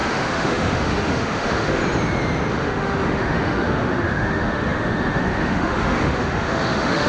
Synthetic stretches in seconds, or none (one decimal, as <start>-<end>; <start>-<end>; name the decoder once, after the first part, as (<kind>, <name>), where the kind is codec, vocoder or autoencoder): 0.0-1.8 (autoencoder, DAC-VAE); 2.5-7.1